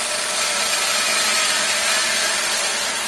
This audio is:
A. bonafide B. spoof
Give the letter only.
A